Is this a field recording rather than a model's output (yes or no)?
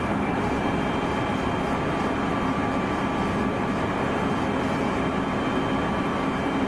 yes